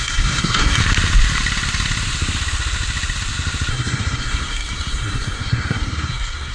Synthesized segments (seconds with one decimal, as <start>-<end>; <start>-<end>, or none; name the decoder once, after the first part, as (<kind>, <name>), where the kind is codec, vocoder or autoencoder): 0.0-0.8 (codec, SNAC); 3.7-6.5